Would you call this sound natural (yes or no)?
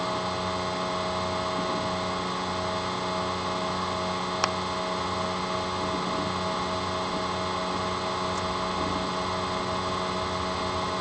yes